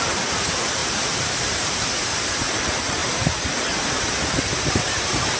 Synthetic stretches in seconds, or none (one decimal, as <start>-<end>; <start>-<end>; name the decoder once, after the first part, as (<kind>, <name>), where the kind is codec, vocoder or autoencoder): 0.8-2.5 (vocoder, BigVGAN v2); 3.0-5.4